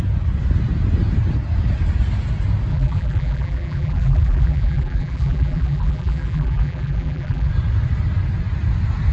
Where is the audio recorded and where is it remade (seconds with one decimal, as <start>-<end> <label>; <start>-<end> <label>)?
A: 0.0-2.7 recorded; 2.7-7.5 remade; 7.5-9.1 recorded